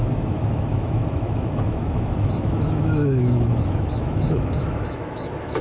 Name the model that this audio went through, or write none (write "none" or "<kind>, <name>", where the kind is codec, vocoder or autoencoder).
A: autoencoder, DAC-VAE